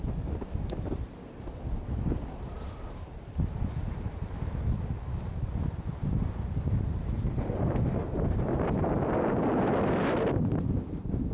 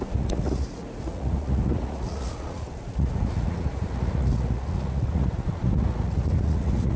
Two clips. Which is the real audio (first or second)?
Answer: first